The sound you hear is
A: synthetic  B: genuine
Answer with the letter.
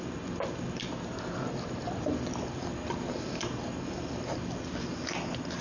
B